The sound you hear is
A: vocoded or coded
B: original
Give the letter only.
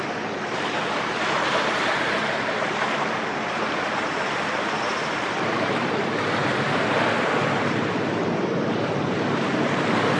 A